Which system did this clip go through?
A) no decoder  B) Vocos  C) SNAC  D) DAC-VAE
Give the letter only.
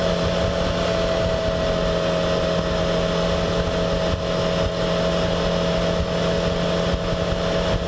A